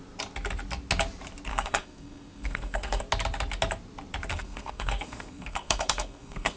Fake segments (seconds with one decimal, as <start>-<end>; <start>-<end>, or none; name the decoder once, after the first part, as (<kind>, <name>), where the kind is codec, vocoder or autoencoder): 1.5-3.0 (codec, SNAC); 4.3-6.6